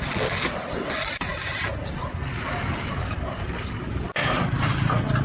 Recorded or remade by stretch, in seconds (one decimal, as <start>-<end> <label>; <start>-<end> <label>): 0.0-5.2 recorded